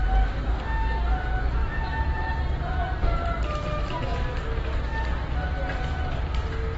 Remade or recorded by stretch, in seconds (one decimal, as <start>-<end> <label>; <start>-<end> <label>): 0.0-1.6 recorded; 1.6-2.3 remade; 2.3-6.8 recorded